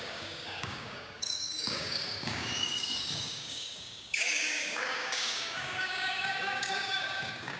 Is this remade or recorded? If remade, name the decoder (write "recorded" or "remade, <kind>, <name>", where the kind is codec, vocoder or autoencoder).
remade, codec, DAC